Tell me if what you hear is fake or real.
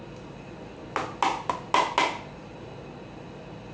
real